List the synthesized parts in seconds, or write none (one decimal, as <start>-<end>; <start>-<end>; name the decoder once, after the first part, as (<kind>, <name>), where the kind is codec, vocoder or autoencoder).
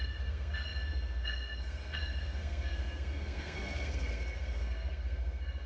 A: 0.0-5.7 (codec, SNAC)